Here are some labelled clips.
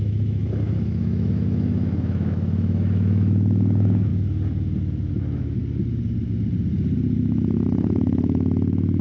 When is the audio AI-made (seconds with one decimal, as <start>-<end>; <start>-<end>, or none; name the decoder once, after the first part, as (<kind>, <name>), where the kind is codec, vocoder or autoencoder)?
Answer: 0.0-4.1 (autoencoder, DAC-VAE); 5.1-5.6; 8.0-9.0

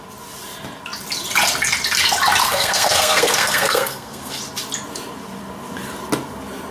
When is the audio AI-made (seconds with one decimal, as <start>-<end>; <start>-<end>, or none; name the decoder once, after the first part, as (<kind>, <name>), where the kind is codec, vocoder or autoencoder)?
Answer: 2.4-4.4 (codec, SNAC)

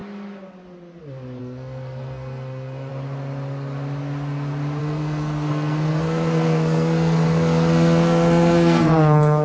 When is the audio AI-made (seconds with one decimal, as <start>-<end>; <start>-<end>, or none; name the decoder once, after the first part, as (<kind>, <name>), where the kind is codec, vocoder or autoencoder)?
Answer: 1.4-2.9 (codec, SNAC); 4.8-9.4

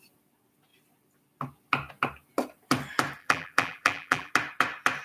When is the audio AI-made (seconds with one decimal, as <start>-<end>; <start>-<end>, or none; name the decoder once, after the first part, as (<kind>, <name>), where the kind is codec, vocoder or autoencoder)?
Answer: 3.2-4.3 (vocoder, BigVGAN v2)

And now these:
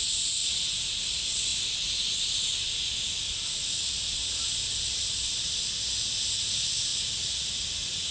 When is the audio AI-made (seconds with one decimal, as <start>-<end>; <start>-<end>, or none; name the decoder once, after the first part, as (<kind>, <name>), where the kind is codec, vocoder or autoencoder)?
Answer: none